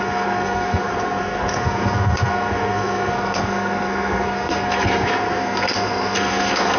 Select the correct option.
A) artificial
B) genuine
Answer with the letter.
A